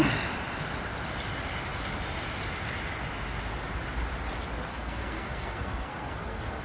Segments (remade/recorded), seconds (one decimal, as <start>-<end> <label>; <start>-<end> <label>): 0.0-4.7 recorded; 4.7-6.6 remade